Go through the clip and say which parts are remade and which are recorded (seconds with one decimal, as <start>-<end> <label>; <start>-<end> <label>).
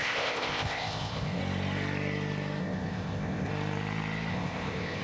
0.0-1.4 remade; 1.4-2.6 recorded; 2.6-3.5 remade; 3.5-4.3 recorded; 4.3-5.0 remade